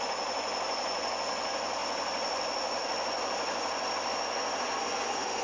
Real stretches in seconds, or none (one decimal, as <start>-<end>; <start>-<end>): none